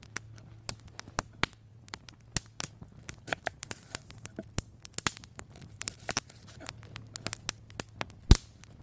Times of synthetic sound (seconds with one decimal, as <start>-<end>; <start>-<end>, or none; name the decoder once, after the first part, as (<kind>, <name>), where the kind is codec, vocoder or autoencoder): 1.7-2.3 (vocoder, BigVGAN v2); 2.9-7.1